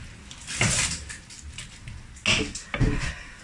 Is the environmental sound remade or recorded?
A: recorded